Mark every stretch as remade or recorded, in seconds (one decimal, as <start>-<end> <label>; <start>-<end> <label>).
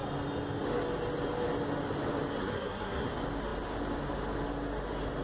0.0-2.4 recorded; 2.4-3.1 remade; 3.1-5.2 recorded